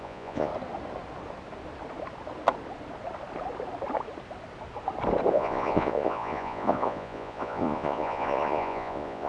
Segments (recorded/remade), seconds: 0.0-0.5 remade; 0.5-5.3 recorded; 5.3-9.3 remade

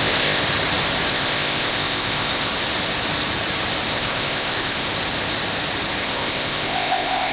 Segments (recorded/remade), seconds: 0.0-0.4 remade; 0.4-1.1 recorded; 1.1-2.5 remade; 2.5-3.9 recorded; 3.9-4.9 remade; 4.9-6.0 recorded; 6.0-7.3 remade

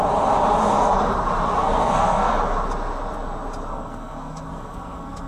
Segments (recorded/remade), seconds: 0.0-1.6 recorded; 1.6-2.3 remade; 2.3-3.7 recorded; 3.7-5.3 remade

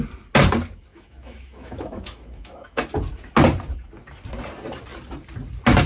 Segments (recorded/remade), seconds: 0.0-0.9 recorded; 0.9-2.9 remade; 2.9-5.9 recorded

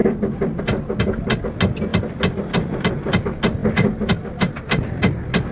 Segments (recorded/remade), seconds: 0.0-0.6 remade; 0.6-1.9 recorded; 1.9-2.9 remade; 2.9-3.6 recorded; 3.6-4.6 remade; 4.6-5.5 recorded